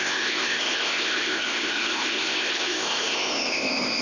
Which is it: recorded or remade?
remade